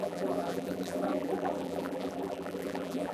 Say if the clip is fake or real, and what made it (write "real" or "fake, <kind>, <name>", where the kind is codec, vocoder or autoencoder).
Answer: fake, vocoder, BigVGAN v2